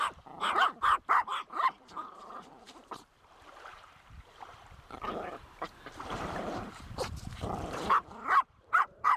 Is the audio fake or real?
fake